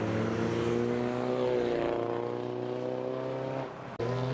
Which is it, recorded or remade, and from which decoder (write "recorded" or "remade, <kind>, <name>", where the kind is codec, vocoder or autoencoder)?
recorded